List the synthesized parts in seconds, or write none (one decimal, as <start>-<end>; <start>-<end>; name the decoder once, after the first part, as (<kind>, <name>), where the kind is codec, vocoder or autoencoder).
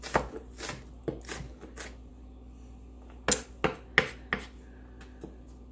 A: none